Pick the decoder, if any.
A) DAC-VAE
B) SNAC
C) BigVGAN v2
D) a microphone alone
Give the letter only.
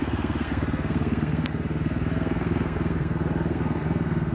B